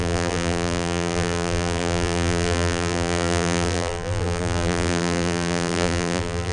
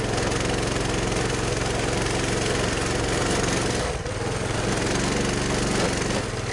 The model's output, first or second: first